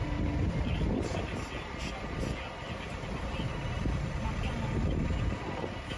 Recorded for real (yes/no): yes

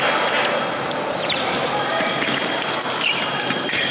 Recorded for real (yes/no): yes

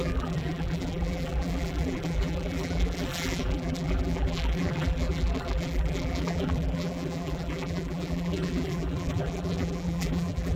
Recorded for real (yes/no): no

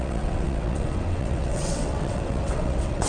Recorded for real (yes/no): no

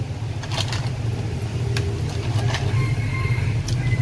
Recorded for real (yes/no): yes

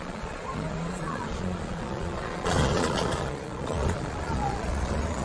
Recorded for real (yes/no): no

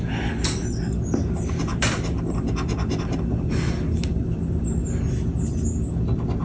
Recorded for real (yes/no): yes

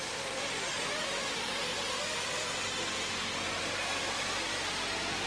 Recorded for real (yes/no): yes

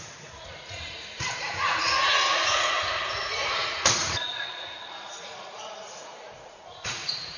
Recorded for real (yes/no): no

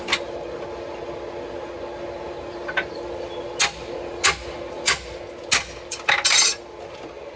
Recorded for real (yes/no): yes